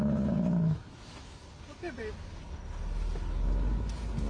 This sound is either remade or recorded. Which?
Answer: recorded